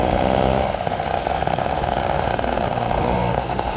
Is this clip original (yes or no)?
no